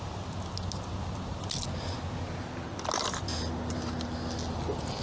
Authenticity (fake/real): real